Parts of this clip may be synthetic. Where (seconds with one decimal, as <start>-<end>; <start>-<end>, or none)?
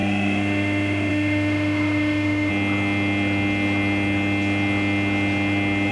0.0-2.5